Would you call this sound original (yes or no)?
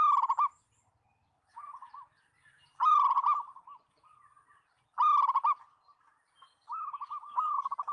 yes